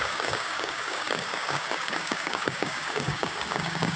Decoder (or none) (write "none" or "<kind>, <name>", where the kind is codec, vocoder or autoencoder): codec, DAC